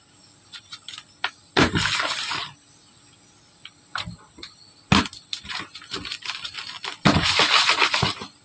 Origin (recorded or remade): recorded